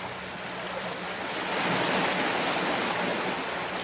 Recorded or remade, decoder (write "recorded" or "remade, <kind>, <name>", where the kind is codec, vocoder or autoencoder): recorded